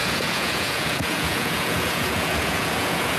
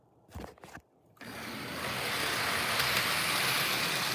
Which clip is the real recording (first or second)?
second